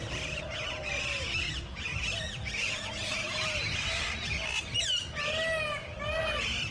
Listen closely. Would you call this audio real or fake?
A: real